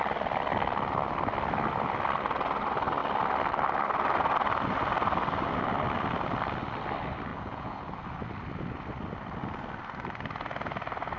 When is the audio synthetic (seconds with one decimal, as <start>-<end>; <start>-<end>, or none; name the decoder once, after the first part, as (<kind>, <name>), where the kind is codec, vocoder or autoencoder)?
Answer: 7.3-8.0 (vocoder, Vocos)